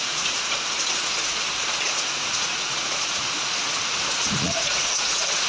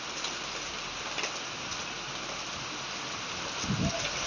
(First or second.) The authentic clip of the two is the second